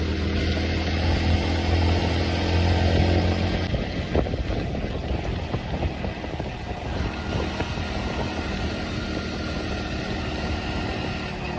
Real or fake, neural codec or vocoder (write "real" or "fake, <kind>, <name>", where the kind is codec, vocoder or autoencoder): real